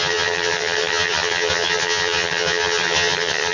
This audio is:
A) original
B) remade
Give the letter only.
B